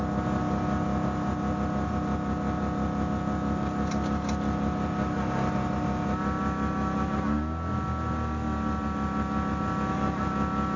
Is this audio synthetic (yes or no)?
no